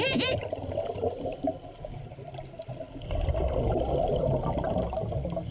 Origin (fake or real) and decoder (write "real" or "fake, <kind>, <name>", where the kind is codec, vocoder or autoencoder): real